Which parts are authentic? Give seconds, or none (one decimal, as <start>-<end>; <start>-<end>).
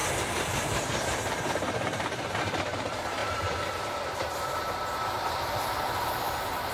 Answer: none